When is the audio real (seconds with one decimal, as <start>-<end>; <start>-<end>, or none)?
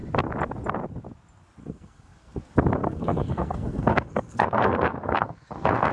0.0-1.6; 2.4-2.8